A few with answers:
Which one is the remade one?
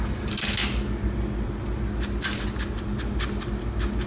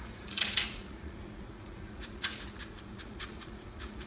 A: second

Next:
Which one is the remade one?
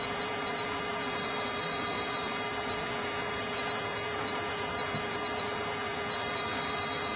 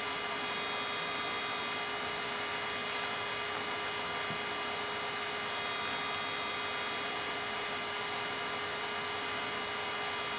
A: first